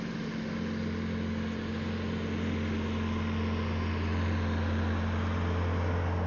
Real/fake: real